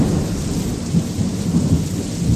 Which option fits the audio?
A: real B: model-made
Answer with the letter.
A